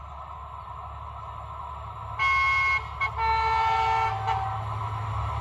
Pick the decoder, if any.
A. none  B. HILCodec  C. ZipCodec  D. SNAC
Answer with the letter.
A